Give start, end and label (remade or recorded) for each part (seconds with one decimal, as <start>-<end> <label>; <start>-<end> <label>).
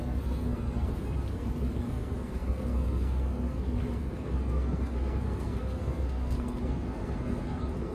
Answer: 0.0-7.9 remade